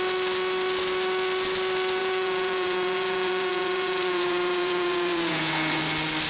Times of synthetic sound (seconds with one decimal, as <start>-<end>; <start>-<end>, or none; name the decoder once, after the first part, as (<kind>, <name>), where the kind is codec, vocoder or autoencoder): 2.0-5.8 (vocoder, Vocos)